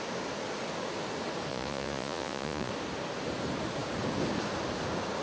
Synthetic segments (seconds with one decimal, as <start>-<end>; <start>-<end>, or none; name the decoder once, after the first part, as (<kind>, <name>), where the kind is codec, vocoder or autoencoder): 1.5-2.7 (vocoder, Vocos)